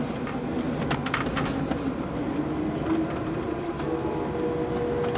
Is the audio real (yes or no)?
yes